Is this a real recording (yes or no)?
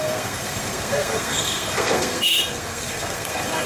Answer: no